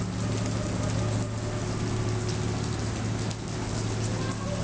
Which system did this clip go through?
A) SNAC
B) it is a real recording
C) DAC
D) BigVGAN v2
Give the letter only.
B